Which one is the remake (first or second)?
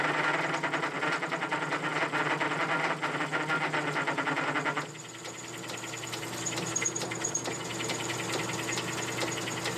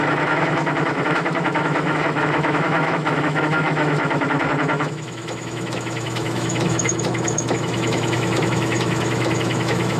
second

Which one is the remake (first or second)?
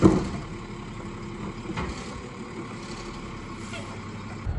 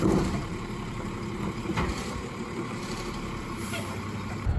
second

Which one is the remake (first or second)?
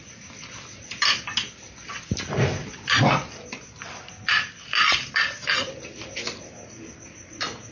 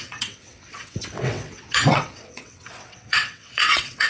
second